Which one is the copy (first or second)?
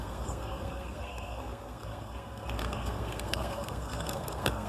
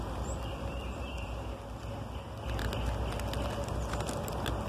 first